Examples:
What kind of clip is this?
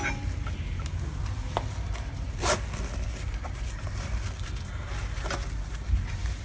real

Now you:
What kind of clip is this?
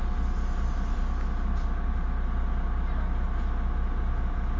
real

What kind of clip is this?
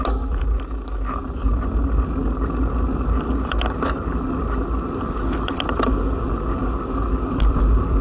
real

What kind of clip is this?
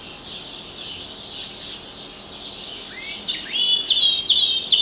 real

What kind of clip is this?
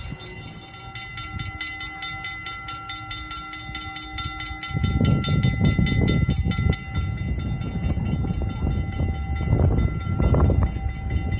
real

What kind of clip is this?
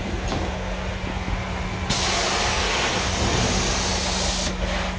real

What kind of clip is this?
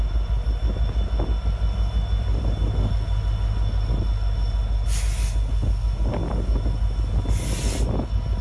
real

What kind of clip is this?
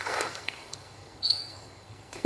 fake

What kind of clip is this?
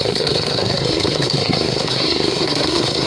fake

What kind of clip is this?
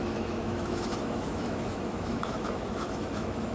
fake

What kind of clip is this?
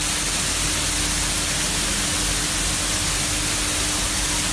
real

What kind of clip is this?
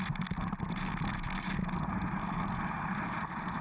real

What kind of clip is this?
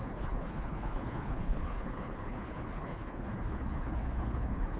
fake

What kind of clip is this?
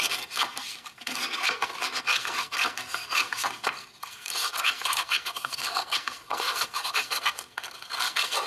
fake